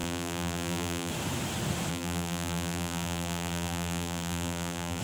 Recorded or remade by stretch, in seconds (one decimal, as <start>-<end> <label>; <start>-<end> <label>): 0.0-1.1 remade; 1.1-1.9 recorded; 1.9-5.0 remade

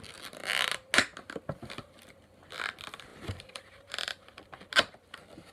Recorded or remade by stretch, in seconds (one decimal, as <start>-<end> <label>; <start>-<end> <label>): 0.0-3.1 recorded; 3.1-4.4 remade; 4.4-5.5 recorded